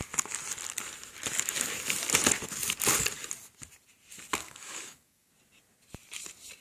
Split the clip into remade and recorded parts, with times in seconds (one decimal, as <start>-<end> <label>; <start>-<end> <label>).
0.0-4.4 recorded; 4.4-5.3 remade; 5.3-6.6 recorded